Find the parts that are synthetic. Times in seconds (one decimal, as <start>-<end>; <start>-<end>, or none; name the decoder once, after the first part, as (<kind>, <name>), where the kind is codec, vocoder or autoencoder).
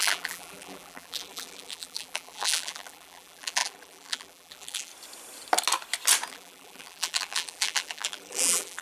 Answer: 0.0-4.9 (vocoder, BigVGAN v2); 6.3-8.8